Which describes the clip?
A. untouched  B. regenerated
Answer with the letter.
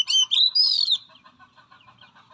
A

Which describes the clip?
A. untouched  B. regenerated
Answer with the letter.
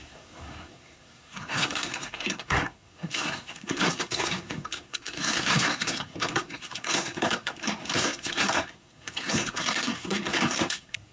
B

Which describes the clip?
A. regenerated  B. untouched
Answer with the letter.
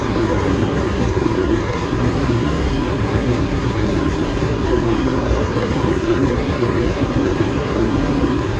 A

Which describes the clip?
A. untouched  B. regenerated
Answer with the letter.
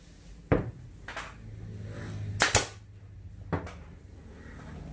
A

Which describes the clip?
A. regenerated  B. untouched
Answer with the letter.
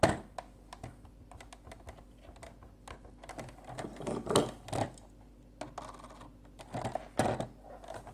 B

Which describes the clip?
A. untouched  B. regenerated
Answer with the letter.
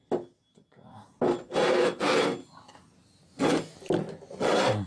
A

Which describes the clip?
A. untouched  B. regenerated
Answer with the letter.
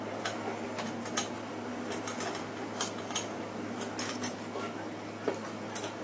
A